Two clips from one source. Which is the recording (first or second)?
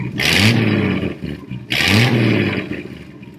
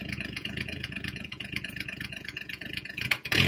first